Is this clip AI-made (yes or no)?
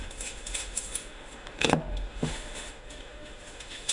yes